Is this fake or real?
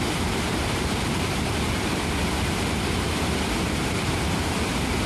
fake